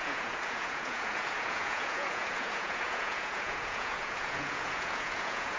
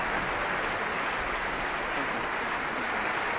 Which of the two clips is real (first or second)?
second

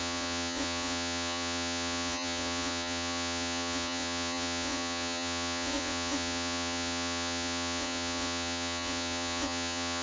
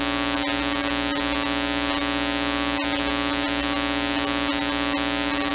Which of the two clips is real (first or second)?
second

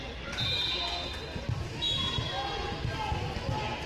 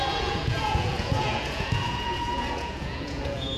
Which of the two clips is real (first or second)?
first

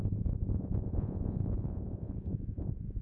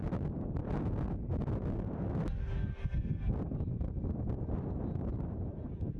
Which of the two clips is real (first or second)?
second